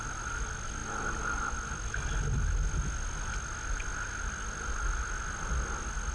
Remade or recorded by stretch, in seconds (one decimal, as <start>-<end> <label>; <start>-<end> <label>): 0.0-6.1 recorded